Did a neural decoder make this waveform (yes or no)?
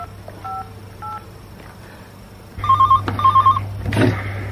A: no